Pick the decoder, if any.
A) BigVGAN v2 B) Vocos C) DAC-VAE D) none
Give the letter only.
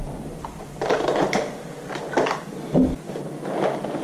D